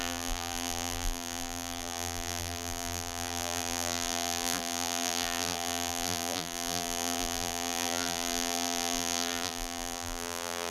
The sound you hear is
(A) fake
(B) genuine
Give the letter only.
A